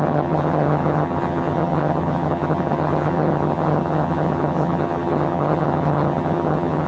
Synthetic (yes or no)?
yes